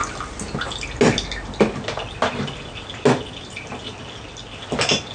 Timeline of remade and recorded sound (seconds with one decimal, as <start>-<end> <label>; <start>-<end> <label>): 0.0-5.1 recorded

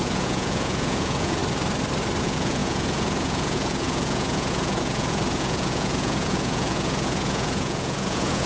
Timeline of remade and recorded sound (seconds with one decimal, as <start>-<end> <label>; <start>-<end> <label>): 0.0-1.4 remade; 1.4-2.2 recorded; 2.2-8.5 remade

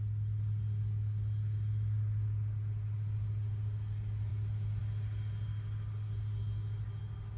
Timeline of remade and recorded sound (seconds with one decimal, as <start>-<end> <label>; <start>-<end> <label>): 0.0-7.4 recorded